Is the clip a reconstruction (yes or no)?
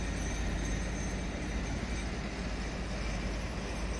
no